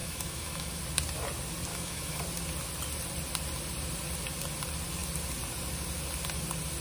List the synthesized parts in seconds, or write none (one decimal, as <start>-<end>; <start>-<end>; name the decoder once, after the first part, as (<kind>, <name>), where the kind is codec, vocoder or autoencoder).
0.0-0.8 (autoencoder, DAC-VAE); 1.7-2.2